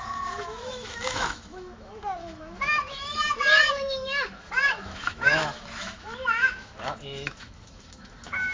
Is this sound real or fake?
fake